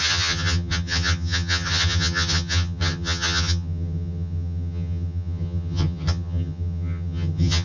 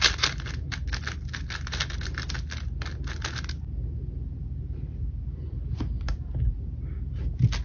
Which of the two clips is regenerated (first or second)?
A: first